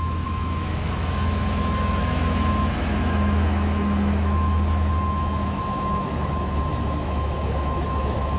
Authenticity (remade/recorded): remade